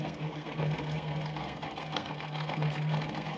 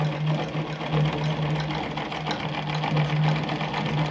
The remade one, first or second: first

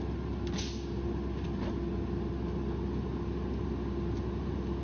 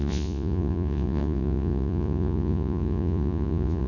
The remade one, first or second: second